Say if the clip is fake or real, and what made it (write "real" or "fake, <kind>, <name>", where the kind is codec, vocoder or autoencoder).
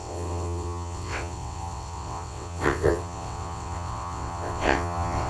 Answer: fake, vocoder, WaveNeXt